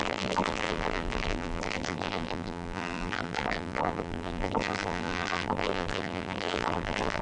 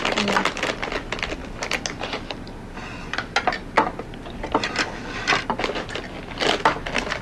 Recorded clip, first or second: second